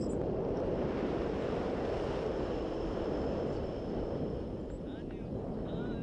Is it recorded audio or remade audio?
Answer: recorded